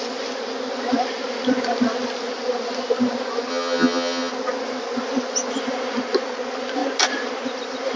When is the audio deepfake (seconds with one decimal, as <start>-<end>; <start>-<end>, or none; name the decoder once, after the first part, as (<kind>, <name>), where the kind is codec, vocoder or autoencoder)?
3.5-4.3 (vocoder, HiFi-GAN)